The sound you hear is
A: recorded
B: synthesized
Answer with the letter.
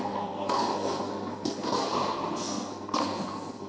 B